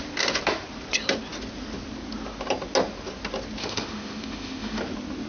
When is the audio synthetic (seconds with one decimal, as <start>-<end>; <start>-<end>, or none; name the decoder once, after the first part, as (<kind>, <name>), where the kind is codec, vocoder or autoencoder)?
3.6-4.8 (autoencoder, DAC-VAE)